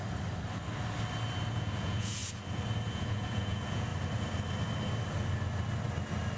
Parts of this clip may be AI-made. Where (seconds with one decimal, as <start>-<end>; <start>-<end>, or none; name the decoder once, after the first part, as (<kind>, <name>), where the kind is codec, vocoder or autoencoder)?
1.5-2.2 (vocoder, Vocos); 2.9-3.9